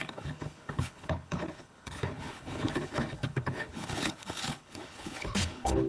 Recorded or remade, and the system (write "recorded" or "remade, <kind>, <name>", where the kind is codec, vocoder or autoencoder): remade, codec, HILCodec